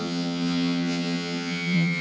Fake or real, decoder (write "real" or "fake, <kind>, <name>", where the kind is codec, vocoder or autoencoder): fake, vocoder, HiFi-GAN